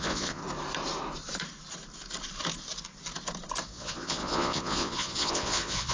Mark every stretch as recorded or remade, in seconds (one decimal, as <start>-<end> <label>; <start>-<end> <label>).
0.0-0.4 remade; 0.4-3.6 recorded; 3.6-5.9 remade